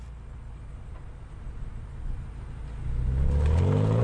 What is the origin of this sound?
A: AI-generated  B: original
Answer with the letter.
B